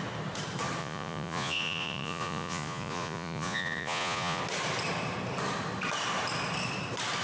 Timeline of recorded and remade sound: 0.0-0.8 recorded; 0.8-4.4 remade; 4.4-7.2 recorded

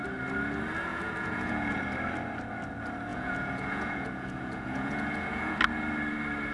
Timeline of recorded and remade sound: 0.0-0.9 recorded; 0.9-1.8 remade; 1.8-3.1 recorded; 3.1-5.6 remade; 5.6-6.5 recorded

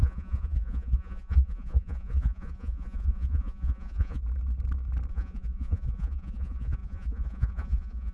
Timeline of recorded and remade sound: 0.0-4.2 remade; 4.2-5.1 recorded; 5.1-8.1 remade

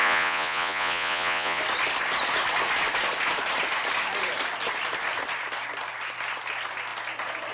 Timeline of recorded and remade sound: 0.0-1.6 remade; 1.6-7.5 recorded

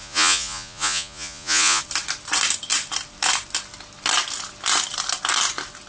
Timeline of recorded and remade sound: 0.0-1.8 remade; 1.8-5.9 recorded